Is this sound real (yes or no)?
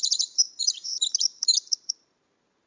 no